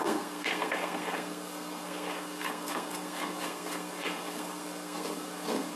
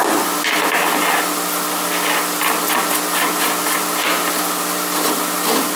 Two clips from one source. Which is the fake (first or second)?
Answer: first